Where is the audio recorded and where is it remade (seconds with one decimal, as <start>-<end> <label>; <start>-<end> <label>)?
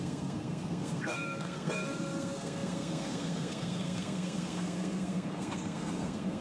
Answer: 0.0-6.4 remade